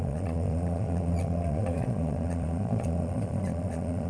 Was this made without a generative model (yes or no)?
no